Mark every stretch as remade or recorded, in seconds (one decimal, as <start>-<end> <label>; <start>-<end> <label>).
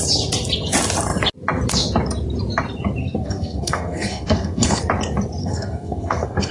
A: 0.0-3.0 recorded; 3.0-4.8 remade; 4.8-5.4 recorded; 5.4-6.5 remade